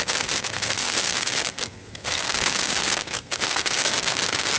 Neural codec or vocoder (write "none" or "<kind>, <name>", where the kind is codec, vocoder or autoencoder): codec, SNAC